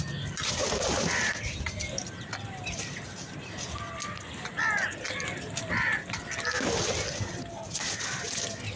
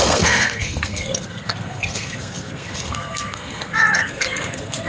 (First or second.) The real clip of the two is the first